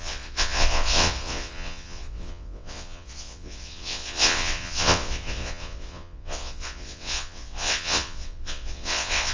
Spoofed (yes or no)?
yes